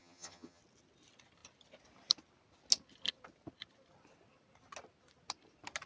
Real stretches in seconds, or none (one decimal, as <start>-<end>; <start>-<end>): 0.6-5.9